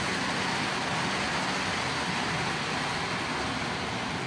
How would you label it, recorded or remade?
recorded